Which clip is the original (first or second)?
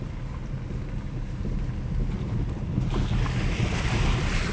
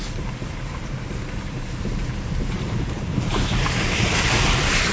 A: first